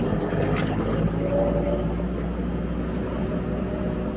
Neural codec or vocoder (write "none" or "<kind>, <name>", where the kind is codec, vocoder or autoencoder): none